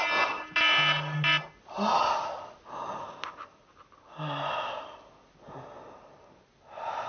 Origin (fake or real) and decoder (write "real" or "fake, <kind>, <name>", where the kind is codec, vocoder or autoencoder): real